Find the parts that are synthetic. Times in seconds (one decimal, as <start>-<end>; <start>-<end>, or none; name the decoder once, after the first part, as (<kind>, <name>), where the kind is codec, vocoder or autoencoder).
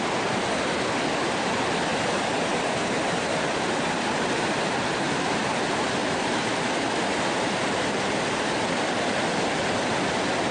1.9-4.9 (vocoder, BigVGAN v2); 6.0-6.6